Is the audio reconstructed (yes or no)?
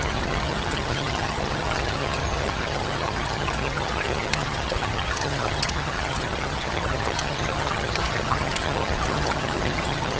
yes